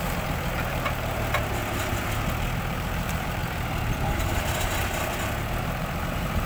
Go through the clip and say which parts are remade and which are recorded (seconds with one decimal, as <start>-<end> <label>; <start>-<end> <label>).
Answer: 0.0-1.6 remade; 1.6-2.7 recorded; 2.7-3.4 remade; 3.4-5.6 recorded; 5.6-6.5 remade